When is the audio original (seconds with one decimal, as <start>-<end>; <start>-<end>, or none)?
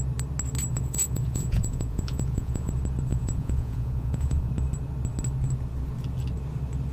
0.0-0.7; 2.7-3.1; 4.5-6.9